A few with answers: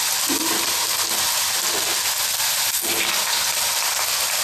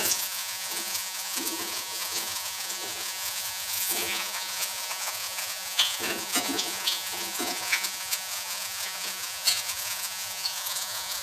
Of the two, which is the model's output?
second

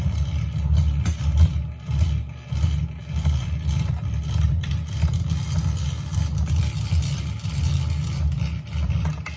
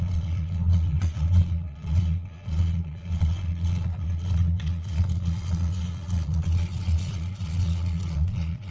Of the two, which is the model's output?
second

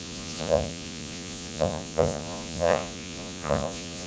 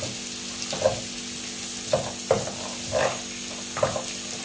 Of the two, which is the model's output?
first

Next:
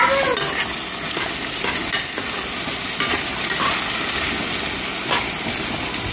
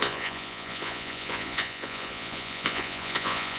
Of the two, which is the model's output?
second